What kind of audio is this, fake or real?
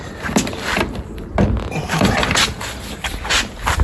real